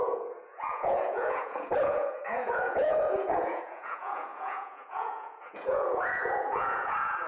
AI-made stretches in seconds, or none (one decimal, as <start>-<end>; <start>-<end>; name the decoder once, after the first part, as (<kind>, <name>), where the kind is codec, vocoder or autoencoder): 0.0-7.3 (vocoder, Vocos)